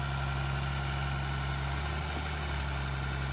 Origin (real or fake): real